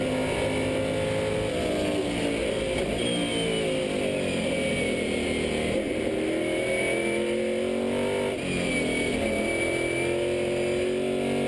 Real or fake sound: real